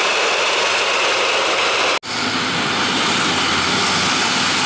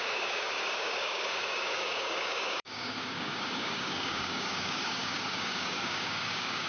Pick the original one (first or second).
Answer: first